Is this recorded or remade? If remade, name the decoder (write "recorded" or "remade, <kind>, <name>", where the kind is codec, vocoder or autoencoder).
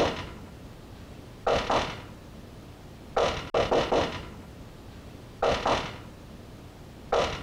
recorded